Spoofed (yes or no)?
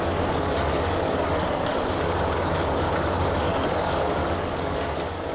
yes